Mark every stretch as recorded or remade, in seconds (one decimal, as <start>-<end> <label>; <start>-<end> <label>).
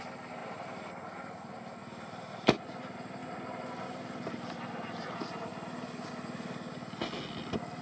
0.0-7.8 recorded